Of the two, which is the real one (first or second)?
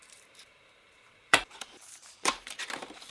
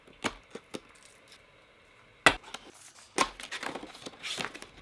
second